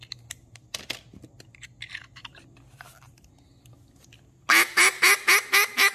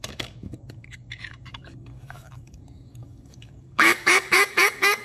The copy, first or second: second